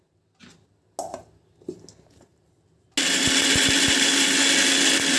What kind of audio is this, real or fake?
real